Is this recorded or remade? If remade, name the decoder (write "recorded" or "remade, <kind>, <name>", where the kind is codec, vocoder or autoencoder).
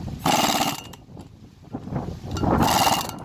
recorded